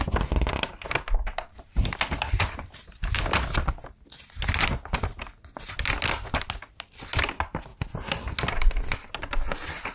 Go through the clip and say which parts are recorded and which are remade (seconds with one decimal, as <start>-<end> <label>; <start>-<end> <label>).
0.0-9.9 recorded